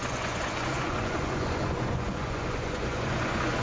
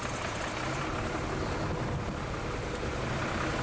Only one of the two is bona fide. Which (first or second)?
second